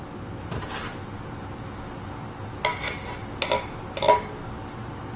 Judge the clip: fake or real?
real